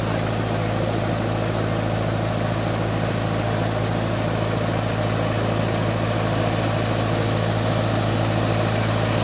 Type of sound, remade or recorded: recorded